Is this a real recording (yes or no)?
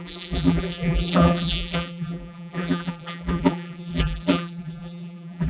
no